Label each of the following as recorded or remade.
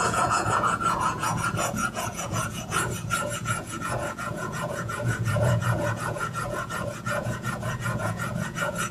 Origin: remade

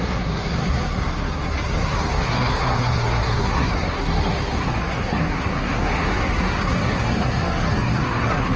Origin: remade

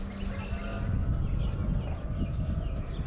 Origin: recorded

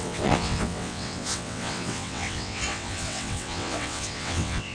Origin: remade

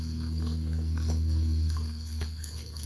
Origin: remade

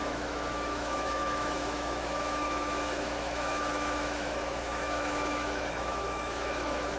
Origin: remade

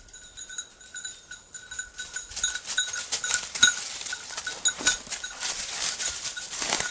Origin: recorded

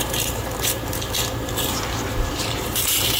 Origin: remade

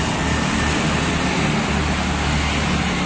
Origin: recorded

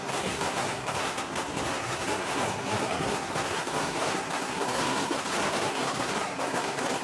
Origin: remade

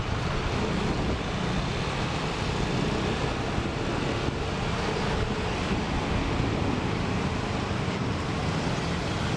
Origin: recorded